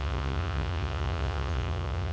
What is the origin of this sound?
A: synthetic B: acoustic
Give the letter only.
A